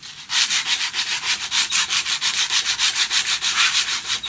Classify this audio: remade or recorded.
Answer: remade